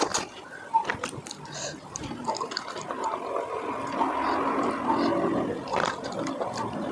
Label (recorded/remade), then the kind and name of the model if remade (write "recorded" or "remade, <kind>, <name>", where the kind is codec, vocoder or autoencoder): recorded